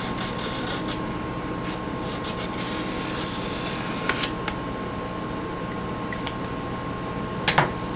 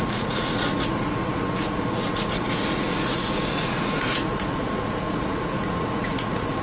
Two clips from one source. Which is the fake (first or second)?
second